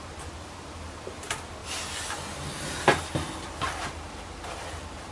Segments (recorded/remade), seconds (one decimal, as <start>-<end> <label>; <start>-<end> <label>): 0.0-1.6 remade; 1.6-5.1 recorded

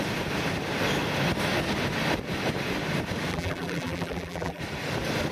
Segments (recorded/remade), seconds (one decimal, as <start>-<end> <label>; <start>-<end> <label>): 0.0-3.3 recorded; 3.3-4.6 remade; 4.6-5.3 recorded

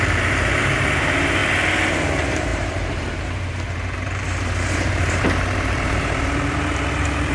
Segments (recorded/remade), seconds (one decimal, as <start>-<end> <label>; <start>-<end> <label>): 0.0-1.4 remade; 1.4-1.9 recorded; 1.9-7.3 remade

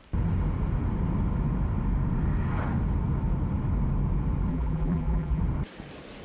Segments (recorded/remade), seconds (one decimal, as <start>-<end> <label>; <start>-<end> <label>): 0.0-4.5 recorded; 4.5-5.4 remade; 5.4-6.2 recorded

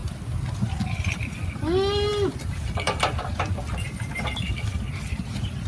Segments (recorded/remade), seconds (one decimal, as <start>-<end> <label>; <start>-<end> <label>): 0.0-0.8 remade; 0.8-5.7 recorded

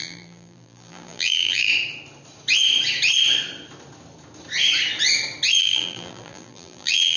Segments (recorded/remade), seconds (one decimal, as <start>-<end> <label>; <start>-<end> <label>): 0.0-1.7 remade; 1.7-5.6 recorded; 5.6-7.2 remade

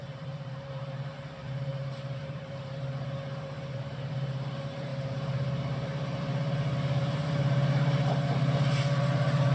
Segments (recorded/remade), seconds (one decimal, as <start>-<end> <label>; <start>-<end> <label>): 0.0-9.5 remade